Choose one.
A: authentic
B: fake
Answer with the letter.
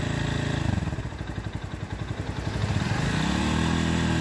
A